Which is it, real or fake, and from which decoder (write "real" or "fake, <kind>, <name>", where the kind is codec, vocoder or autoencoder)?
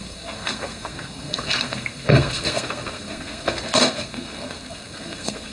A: fake, codec, SNAC